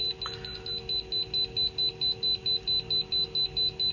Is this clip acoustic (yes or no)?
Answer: yes